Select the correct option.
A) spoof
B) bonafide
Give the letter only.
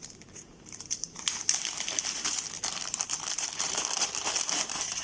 A